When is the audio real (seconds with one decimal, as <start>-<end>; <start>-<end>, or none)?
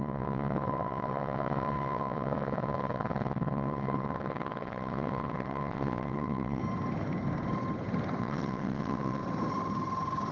6.6-8.2; 9.2-10.3